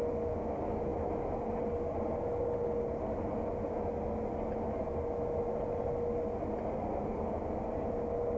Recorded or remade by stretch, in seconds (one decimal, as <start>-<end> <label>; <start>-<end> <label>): 0.0-8.4 recorded